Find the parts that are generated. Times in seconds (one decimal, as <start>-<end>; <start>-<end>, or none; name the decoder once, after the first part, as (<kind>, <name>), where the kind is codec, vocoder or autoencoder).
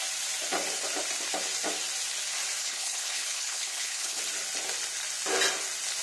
2.6-4.2 (codec, HILCodec)